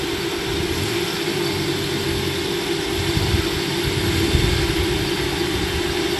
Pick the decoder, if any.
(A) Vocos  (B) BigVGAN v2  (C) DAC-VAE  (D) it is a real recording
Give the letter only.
D